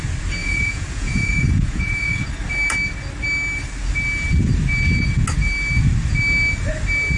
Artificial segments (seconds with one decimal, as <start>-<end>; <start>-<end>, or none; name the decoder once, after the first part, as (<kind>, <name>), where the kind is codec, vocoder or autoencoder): 0.4-2.3 (vocoder, Vocos)